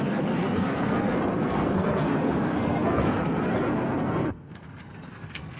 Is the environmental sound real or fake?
fake